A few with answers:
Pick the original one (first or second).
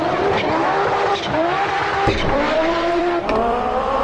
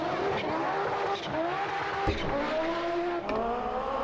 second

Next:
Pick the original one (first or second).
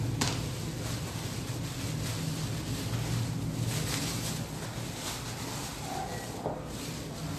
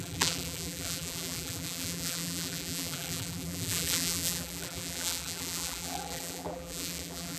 first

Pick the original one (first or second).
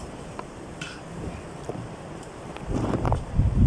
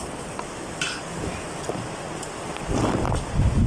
second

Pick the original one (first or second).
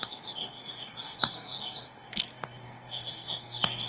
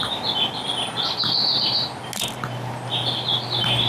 second